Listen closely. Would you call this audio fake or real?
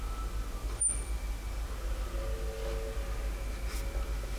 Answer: real